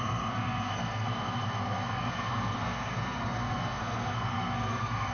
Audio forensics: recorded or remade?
remade